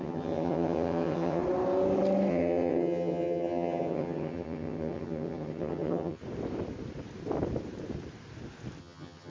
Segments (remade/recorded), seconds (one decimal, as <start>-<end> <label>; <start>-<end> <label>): 0.0-1.4 remade; 1.4-2.3 recorded; 2.3-6.2 remade; 6.2-8.8 recorded; 8.8-9.3 remade